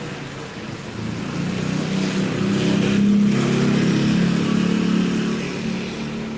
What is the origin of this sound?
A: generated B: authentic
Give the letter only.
B